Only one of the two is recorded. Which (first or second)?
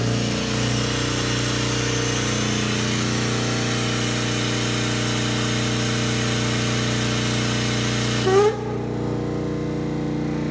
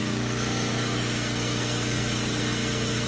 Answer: first